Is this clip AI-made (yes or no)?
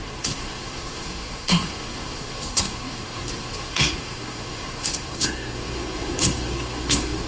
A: yes